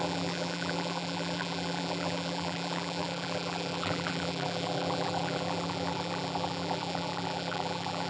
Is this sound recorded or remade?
remade